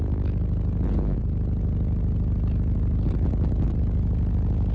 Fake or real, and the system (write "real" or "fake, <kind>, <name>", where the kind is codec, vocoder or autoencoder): real